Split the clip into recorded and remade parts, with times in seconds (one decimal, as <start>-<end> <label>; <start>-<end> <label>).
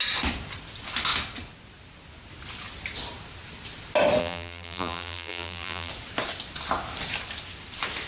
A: 0.0-4.2 recorded; 4.2-5.9 remade; 5.9-8.1 recorded